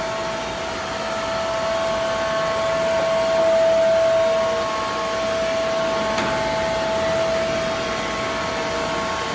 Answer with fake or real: real